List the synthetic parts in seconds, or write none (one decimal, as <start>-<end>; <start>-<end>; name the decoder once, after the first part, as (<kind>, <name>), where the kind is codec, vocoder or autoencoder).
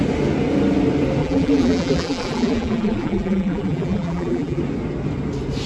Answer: 1.2-4.6 (vocoder, BigVGAN v2)